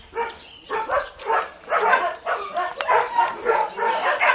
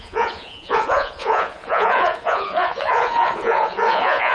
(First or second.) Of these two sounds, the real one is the first